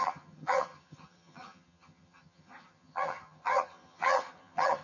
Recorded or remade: remade